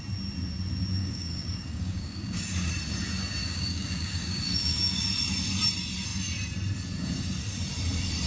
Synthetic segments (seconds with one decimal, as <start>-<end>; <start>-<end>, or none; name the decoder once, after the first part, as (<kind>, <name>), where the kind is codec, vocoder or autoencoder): 1.0-2.7 (codec, DAC); 3.4-5.0